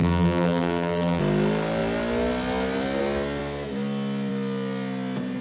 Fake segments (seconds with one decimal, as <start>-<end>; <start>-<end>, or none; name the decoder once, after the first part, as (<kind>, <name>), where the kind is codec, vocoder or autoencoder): 0.0-1.2 (vocoder, BigVGAN v2)